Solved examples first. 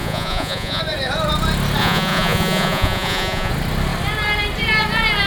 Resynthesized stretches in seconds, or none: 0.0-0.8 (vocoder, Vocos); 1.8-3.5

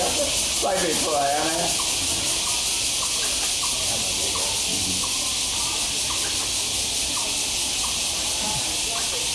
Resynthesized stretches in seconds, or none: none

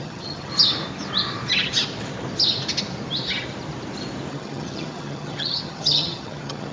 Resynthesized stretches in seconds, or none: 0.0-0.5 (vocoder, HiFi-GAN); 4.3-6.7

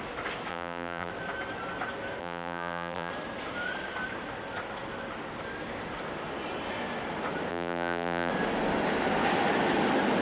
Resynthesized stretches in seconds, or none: 0.5-1.1 (vocoder, BigVGAN v2); 2.2-3.1; 7.5-8.3

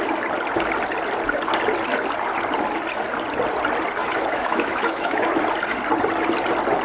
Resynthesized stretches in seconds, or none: 4.0-5.4 (autoencoder, DAC-VAE)

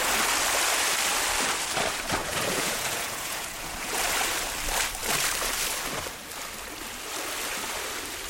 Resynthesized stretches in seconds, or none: 2.2-4.0 (vocoder, Vocos)

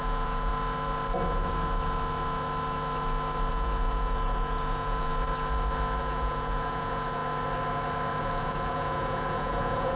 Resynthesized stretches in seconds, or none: 0.0-0.5 (vocoder, Vocos); 3.5-5.1; 6.0-7.2; 8.2-10.0